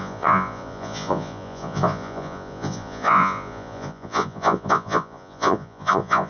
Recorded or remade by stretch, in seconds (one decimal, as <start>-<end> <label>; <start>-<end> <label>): 0.0-6.3 remade